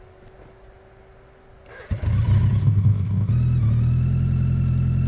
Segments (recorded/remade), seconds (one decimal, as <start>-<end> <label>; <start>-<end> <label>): 0.0-2.6 recorded; 2.6-3.3 remade; 3.3-5.1 recorded